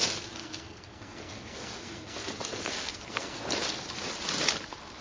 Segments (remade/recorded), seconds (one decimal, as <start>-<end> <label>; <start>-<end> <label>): 0.0-0.4 recorded; 0.4-3.4 remade; 3.4-5.0 recorded